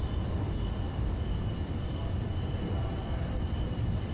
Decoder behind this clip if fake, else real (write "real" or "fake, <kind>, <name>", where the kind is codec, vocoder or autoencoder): real